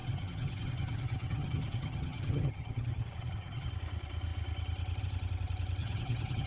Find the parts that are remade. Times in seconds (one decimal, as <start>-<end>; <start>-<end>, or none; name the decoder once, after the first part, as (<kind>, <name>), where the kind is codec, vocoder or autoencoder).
0.0-3.7 (vocoder, HiFi-GAN); 5.8-6.5